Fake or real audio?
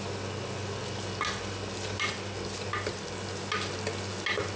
real